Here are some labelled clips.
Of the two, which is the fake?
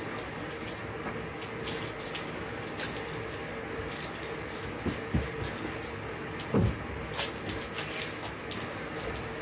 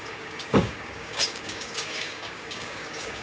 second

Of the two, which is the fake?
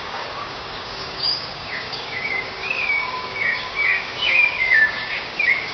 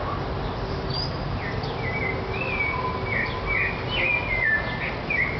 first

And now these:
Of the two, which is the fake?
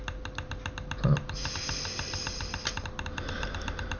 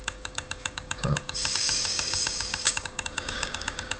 second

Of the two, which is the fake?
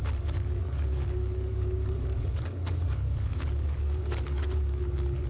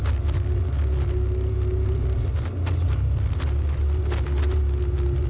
first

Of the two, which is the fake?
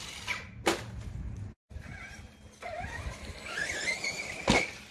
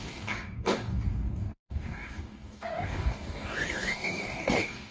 second